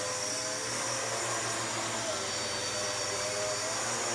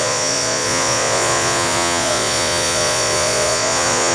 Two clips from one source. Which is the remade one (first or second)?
second